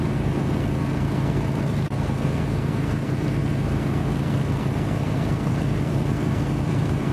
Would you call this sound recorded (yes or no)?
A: no